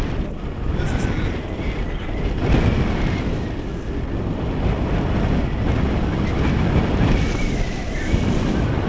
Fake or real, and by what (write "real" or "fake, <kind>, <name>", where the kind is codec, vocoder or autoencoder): real